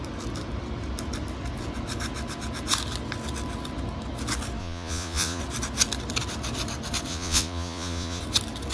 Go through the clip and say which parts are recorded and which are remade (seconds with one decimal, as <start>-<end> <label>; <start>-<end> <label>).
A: 0.0-4.6 recorded; 4.6-5.4 remade; 5.4-7.1 recorded; 7.1-8.2 remade; 8.2-8.7 recorded